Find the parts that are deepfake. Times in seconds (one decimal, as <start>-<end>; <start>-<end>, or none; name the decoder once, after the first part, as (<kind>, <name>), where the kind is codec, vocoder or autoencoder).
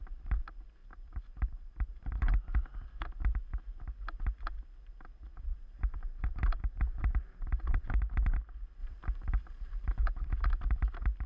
0.8-2.4 (vocoder, BigVGAN v2); 5.5-7.8; 8.8-10.0